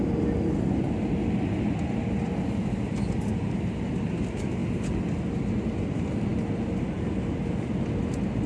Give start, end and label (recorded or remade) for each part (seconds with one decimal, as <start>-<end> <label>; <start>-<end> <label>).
0.0-8.5 recorded